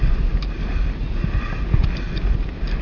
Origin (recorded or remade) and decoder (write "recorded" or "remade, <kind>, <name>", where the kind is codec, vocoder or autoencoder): recorded